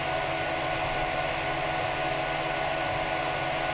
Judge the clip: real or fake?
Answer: real